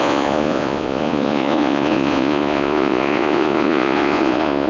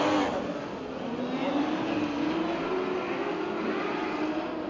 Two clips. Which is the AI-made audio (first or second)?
first